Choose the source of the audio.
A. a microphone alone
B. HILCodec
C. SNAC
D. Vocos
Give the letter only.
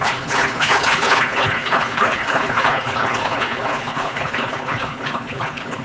B